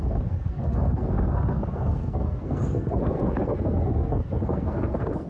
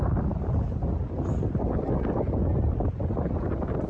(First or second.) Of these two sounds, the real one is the second